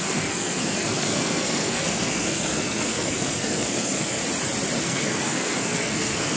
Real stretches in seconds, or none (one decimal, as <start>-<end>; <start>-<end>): 4.2-4.8